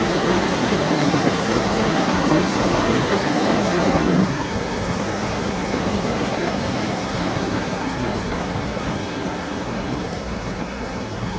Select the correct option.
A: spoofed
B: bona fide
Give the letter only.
A